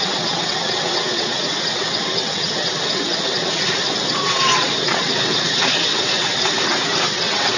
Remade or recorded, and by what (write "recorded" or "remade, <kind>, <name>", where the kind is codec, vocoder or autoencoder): remade, vocoder, WaveNeXt